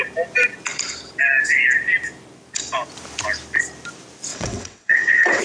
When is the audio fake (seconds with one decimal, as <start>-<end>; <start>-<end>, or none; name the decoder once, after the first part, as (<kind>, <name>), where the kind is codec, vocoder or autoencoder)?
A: 4.3-5.4 (vocoder, WaveNeXt)